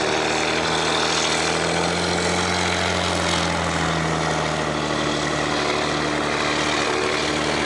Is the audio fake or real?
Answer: real